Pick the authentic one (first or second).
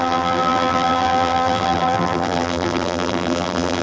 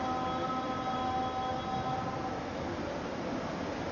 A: second